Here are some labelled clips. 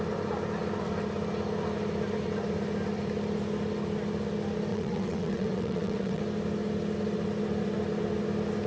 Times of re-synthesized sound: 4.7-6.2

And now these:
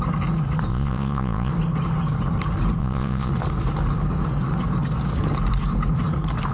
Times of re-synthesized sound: 0.7-1.5; 2.8-3.3

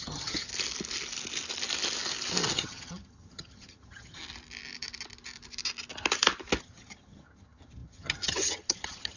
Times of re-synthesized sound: 0.0-0.5; 2.5-4.2; 6.6-9.2

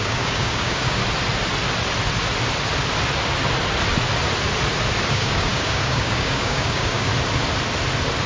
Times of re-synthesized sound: 0.0-1.0; 5.1-7.1

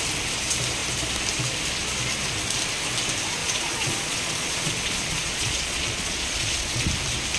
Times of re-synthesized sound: 3.4-6.9

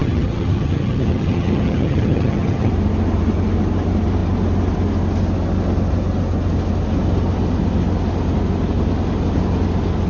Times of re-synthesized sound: 0.0-2.7

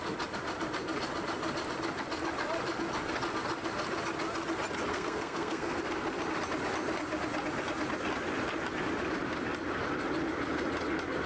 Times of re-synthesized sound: 4.9-5.8

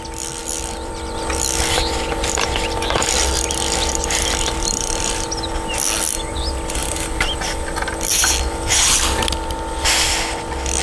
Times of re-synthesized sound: 0.4-4.9; 6.8-10.1